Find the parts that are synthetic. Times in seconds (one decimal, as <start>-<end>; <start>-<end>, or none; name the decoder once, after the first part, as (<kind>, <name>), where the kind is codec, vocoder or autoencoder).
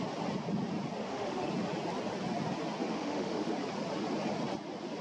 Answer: 1.0-1.5 (autoencoder, DAC-VAE); 2.9-3.5